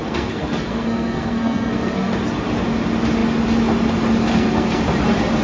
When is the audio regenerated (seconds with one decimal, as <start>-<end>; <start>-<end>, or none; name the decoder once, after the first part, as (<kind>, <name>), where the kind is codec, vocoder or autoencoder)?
0.0-2.1 (codec, SNAC); 4.3-4.8